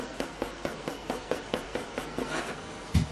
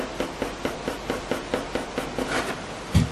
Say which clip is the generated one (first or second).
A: first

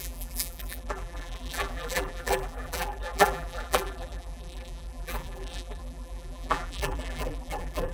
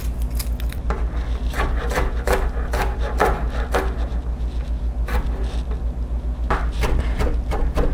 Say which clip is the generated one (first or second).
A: first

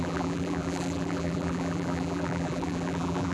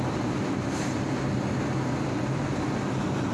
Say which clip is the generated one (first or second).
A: first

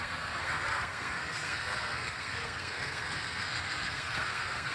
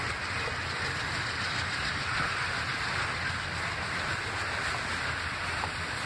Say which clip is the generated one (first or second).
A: first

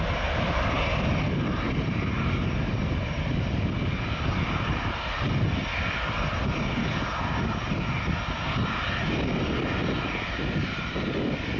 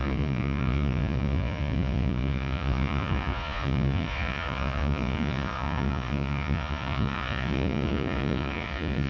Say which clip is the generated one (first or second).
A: second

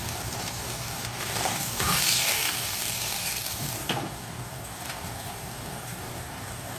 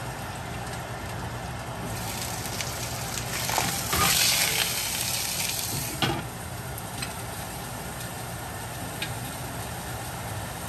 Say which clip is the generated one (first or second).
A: first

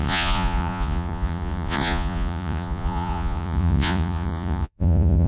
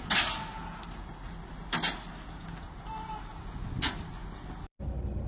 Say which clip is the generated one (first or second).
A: first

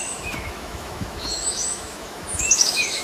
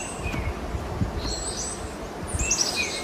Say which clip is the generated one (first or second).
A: first